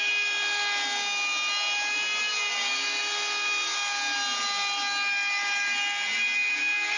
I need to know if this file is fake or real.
real